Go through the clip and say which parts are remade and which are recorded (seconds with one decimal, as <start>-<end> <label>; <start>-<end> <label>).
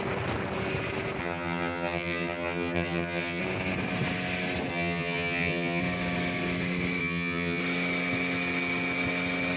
0.0-1.2 recorded; 1.2-3.4 remade; 3.4-4.7 recorded; 4.7-5.8 remade; 5.8-7.0 recorded; 7.0-7.6 remade; 7.6-9.6 recorded